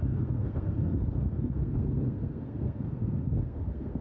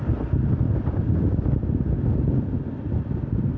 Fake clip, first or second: first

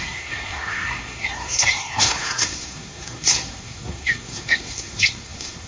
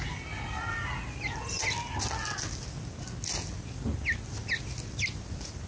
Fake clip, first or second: first